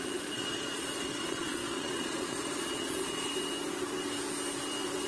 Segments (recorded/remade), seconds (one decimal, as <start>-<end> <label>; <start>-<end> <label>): 0.0-3.3 remade; 3.3-5.1 recorded

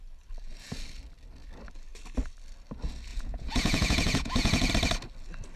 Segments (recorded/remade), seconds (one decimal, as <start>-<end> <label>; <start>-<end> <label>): 0.0-3.1 recorded; 3.1-4.7 remade; 4.7-5.6 recorded

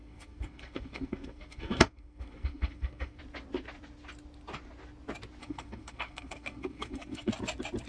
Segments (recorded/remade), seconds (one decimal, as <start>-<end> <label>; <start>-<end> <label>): 0.0-3.2 remade; 3.2-5.4 recorded; 5.4-7.3 remade; 7.3-7.9 recorded

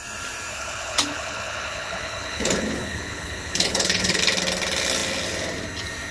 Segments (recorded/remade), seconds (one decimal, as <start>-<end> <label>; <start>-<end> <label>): 0.0-0.5 recorded; 0.5-4.2 remade; 4.2-6.1 recorded

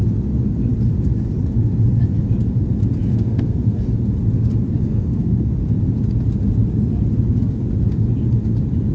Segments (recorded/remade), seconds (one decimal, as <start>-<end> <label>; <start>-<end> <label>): 0.0-3.1 recorded; 3.1-3.8 remade; 3.8-4.8 recorded; 4.8-5.5 remade; 5.5-8.9 recorded

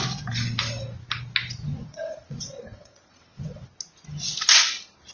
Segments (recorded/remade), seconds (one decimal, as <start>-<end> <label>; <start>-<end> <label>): 0.0-1.8 recorded; 1.8-3.7 remade; 3.7-5.1 recorded

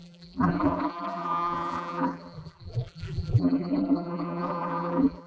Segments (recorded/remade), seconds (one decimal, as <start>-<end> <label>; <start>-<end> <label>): 0.0-5.3 remade

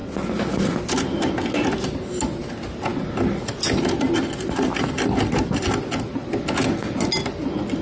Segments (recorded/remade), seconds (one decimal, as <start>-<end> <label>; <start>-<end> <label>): 0.0-7.8 recorded